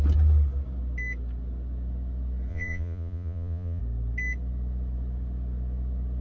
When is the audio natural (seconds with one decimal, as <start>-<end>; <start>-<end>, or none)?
0.0-2.5; 3.8-6.2